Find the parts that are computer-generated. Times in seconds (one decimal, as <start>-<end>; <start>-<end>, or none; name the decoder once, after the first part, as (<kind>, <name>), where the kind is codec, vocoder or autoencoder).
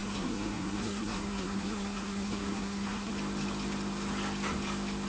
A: 0.0-3.1 (codec, SNAC)